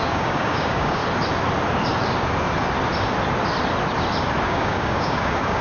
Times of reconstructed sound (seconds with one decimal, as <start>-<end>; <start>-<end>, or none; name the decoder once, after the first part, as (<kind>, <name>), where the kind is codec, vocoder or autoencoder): 0.0-1.0 (codec, DAC); 4.4-5.6